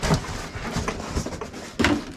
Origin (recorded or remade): recorded